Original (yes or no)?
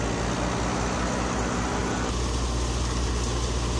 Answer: yes